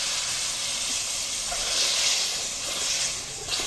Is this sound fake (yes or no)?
no